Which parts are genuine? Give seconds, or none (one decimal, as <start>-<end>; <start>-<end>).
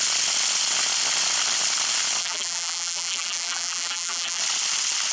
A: 0.0-2.2; 4.4-5.1